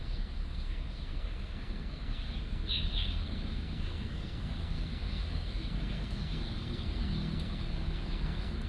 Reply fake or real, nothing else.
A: fake